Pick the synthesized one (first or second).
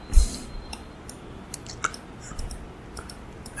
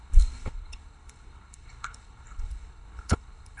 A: second